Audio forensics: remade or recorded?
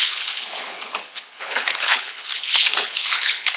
remade